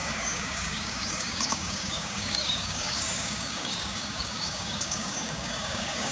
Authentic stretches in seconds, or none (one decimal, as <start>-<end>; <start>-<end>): none